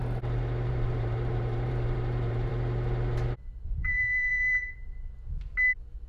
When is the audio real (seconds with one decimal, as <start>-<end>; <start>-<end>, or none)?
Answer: 0.0-0.7; 2.5-3.5; 4.9-6.1